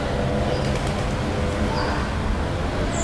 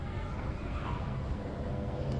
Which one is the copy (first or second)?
second